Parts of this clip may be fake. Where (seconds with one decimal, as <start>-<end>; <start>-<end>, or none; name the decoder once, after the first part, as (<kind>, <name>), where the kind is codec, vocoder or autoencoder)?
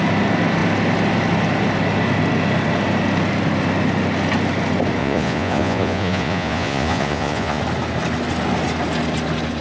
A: 5.0-7.6 (vocoder, Vocos)